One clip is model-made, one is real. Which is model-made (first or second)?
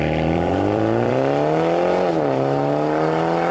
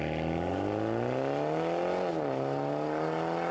first